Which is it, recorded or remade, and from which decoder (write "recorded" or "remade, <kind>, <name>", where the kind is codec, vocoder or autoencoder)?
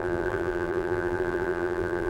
remade, vocoder, BigVGAN v2